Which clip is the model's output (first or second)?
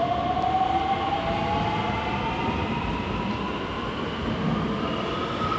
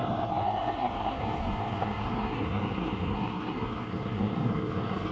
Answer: second